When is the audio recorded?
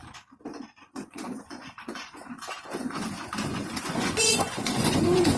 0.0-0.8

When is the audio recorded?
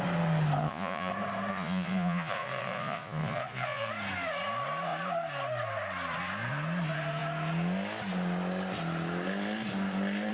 0.0-0.6; 1.1-1.5; 3.9-10.3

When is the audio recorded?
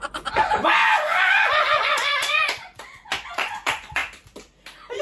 0.8-1.3; 4.0-5.0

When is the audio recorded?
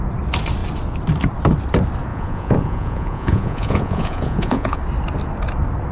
0.0-2.1; 4.8-5.9